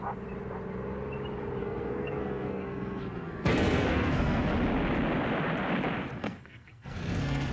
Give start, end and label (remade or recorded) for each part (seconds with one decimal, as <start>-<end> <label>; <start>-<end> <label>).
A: 0.0-1.6 recorded; 1.6-4.5 remade; 4.5-6.2 recorded; 6.2-7.5 remade